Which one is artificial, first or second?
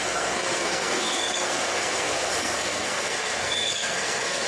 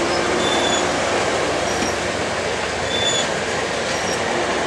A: first